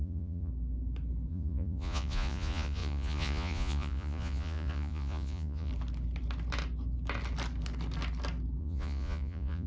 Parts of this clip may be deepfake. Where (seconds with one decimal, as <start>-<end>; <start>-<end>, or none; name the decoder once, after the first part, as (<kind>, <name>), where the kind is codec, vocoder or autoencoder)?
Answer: 0.0-0.5 (vocoder, Vocos); 1.3-5.7; 8.6-9.7